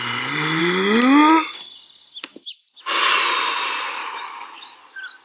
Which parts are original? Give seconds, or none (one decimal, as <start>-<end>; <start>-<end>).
0.0-4.0; 4.8-5.2